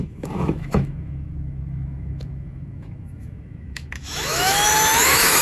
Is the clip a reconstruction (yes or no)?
yes